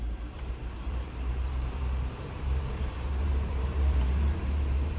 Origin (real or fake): fake